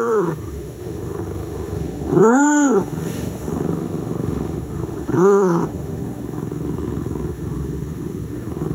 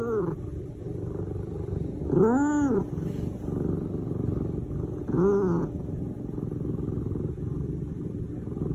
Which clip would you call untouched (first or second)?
second